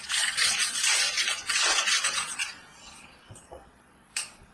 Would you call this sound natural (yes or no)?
no